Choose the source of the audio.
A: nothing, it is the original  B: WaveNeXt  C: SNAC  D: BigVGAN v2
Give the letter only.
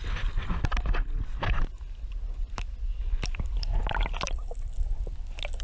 A